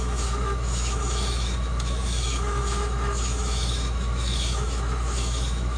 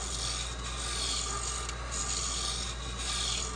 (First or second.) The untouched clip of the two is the second